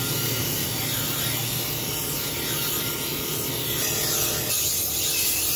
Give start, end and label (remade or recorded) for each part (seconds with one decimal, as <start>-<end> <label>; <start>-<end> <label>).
0.0-5.6 recorded